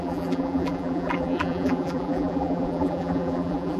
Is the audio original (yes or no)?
no